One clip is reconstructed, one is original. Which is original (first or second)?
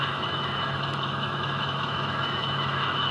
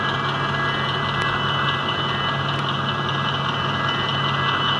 second